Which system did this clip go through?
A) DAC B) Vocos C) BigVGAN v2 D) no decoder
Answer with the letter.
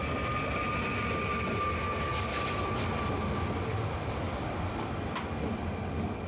D